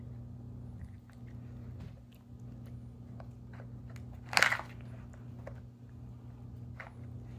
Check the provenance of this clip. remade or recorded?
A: recorded